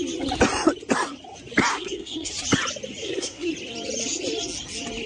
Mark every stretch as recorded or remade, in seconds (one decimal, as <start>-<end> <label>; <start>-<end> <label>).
0.0-1.7 recorded; 1.7-2.3 remade; 2.3-3.0 recorded; 3.0-3.5 remade; 3.5-5.1 recorded